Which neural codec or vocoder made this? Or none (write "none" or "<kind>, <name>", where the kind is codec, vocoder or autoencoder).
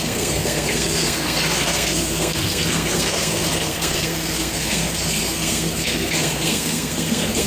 codec, SNAC